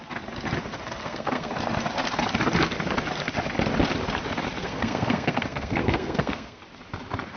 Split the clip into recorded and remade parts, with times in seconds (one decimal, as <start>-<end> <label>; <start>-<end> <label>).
0.0-1.0 recorded; 1.0-1.5 remade; 1.5-4.6 recorded; 4.6-6.6 remade; 6.6-7.4 recorded